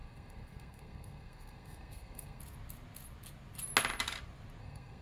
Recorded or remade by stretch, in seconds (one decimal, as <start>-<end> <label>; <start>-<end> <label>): 0.0-2.4 remade; 2.4-4.6 recorded; 4.6-5.0 remade

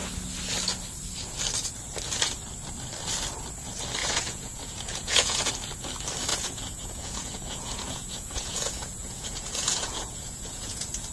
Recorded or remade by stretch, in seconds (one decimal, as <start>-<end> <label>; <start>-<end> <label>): 0.0-4.0 recorded; 4.0-5.5 remade; 5.5-6.3 recorded; 6.3-11.1 remade

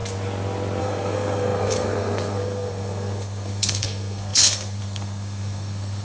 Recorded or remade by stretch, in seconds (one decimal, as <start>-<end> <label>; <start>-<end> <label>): 0.0-0.8 recorded; 0.8-6.0 remade

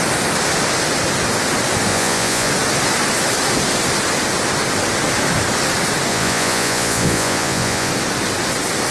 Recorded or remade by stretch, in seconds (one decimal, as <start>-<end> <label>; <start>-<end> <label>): 0.0-1.9 recorded; 1.9-2.5 remade; 2.5-6.1 recorded; 6.1-7.9 remade; 7.9-8.9 recorded

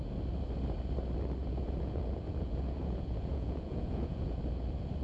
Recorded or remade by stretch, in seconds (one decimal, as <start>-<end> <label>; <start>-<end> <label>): 0.0-1.4 recorded; 1.4-4.4 remade; 4.4-5.0 recorded